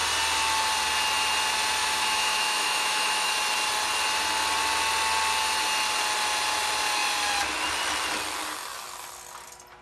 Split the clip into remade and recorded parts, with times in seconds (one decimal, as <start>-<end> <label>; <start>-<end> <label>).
0.0-1.8 recorded; 1.8-3.3 remade; 3.3-9.8 recorded